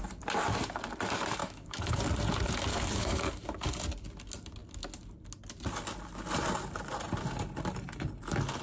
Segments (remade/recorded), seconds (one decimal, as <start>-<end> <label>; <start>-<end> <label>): 0.0-1.4 recorded; 1.4-2.0 remade; 2.0-2.7 recorded; 2.7-3.3 remade; 3.3-8.6 recorded